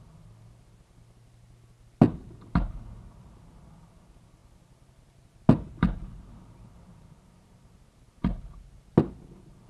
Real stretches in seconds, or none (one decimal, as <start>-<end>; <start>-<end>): 0.0-9.7